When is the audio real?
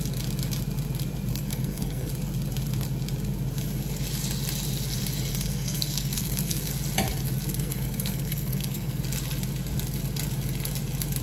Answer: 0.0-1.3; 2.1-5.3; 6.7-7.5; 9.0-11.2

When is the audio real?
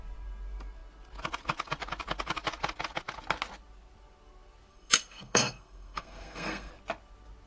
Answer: 0.0-4.7; 6.7-7.5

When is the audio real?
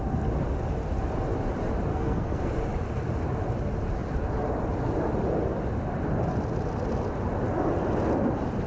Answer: 0.0-1.9; 2.5-8.7